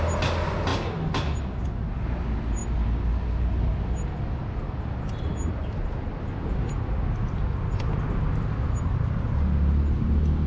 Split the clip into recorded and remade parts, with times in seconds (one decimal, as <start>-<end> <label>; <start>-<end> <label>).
0.0-10.5 recorded